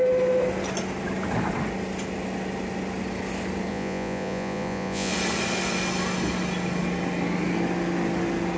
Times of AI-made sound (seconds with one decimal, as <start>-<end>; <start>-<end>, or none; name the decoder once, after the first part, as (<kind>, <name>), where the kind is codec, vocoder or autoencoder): 3.7-5.1 (vocoder, Vocos)